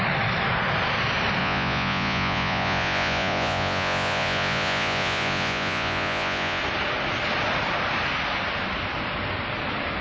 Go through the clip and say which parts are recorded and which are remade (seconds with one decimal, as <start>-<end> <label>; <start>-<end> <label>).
0.0-1.4 recorded; 1.4-6.6 remade; 6.6-10.0 recorded